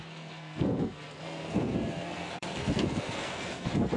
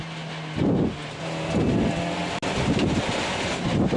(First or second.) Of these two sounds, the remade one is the first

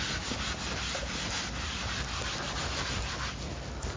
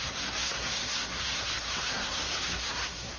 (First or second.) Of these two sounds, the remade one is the second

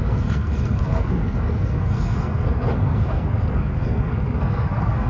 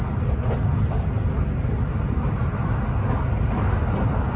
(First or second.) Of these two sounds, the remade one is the first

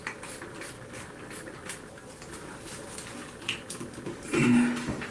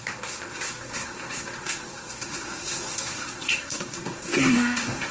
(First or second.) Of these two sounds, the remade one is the second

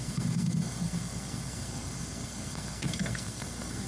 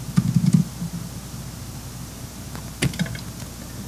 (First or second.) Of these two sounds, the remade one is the first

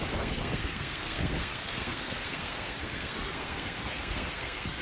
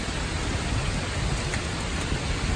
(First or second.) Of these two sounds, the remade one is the first